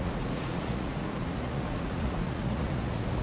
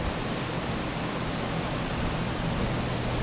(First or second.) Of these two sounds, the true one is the second